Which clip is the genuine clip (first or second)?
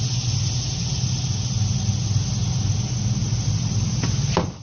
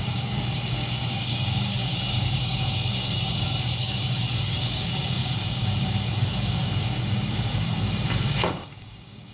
first